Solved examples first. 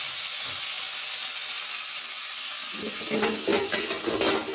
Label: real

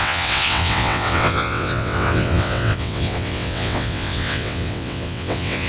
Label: fake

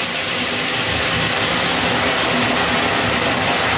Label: real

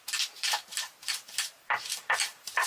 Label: fake